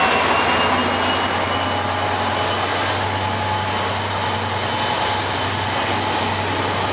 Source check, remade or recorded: recorded